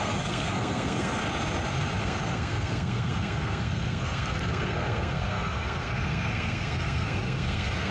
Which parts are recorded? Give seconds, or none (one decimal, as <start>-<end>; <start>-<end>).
1.2-2.0

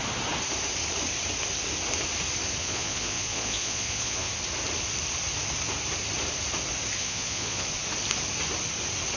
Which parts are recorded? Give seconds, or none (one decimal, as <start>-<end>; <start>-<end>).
0.0-2.6; 4.3-7.0; 7.7-9.2

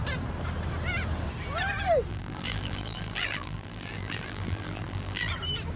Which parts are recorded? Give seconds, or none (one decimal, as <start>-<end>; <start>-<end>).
0.0-2.1; 5.3-5.8